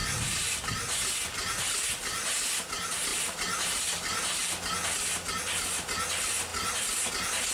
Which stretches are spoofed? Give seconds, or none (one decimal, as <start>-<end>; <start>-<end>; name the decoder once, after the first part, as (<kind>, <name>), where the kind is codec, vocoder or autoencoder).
0.0-0.6 (vocoder, BigVGAN v2); 3.1-4.4